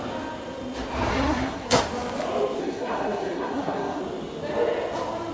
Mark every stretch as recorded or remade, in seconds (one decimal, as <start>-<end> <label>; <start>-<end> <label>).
0.0-1.1 recorded; 1.1-1.8 remade; 1.8-2.6 recorded; 2.6-4.0 remade; 4.0-5.3 recorded